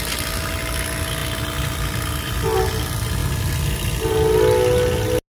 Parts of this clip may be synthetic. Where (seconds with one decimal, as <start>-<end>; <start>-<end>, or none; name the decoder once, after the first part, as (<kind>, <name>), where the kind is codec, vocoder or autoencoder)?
3.2-4.1 (vocoder, BigVGAN v2)